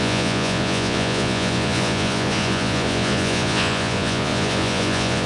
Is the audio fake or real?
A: fake